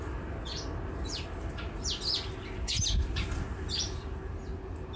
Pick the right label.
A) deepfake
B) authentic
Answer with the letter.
B